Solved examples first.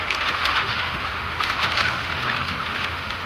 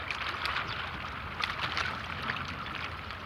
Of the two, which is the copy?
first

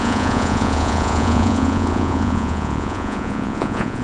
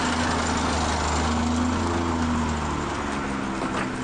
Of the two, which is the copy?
first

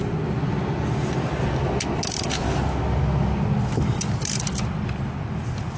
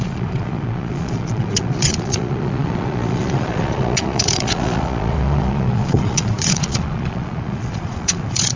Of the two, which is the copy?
second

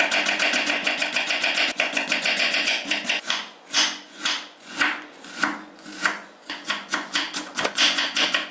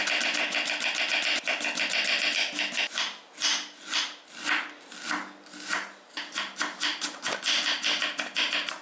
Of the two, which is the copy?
first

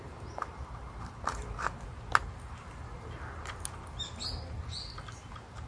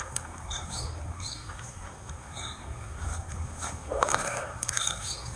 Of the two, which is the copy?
second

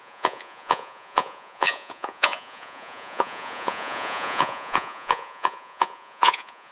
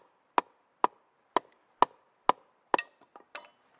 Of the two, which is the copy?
first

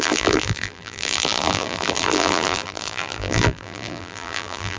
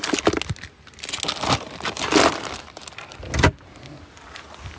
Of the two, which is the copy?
first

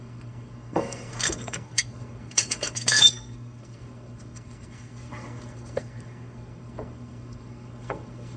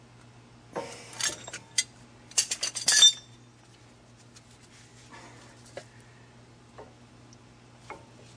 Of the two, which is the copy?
first